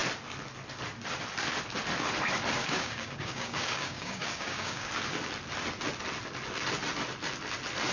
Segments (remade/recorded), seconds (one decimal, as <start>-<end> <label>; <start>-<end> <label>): 0.0-2.6 recorded; 2.6-4.9 remade; 4.9-7.9 recorded